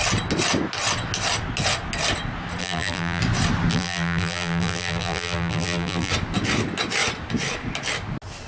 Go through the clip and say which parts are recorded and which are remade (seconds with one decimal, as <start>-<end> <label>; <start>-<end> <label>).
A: 0.0-2.6 recorded; 2.6-3.2 remade; 3.2-3.7 recorded; 3.7-6.1 remade; 6.1-8.5 recorded